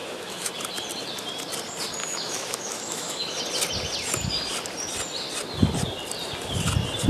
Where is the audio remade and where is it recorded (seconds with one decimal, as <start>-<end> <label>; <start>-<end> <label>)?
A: 0.0-0.5 remade; 0.5-2.0 recorded; 2.0-3.4 remade; 3.4-7.1 recorded

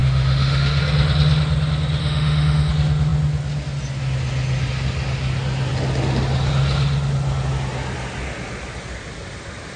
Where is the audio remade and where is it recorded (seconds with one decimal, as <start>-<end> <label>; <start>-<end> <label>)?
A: 0.0-0.8 remade; 0.8-2.0 recorded; 2.0-2.7 remade; 2.7-9.8 recorded

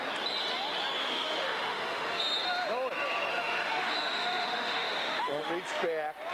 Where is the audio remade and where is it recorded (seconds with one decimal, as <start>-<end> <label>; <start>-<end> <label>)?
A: 0.0-1.0 recorded; 1.0-2.2 remade; 2.2-3.3 recorded; 3.3-5.5 remade; 5.5-6.3 recorded

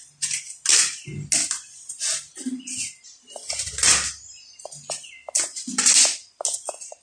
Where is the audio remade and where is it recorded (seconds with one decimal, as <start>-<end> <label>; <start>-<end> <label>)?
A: 0.0-7.0 recorded